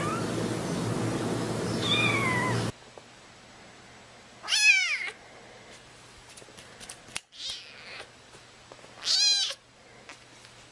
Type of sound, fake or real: real